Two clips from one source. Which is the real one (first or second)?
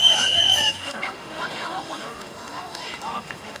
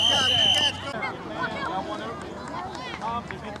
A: second